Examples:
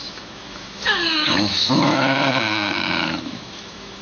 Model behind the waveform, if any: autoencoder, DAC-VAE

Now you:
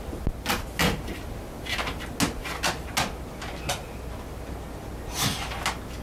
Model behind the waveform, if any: none